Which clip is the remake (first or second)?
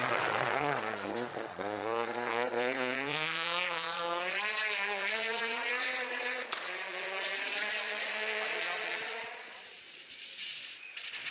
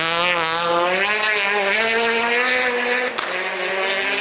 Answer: first